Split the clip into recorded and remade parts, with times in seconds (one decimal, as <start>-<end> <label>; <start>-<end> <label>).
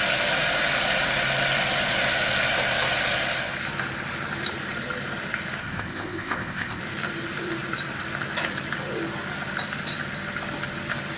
0.0-5.6 recorded; 5.6-6.8 remade; 6.8-11.2 recorded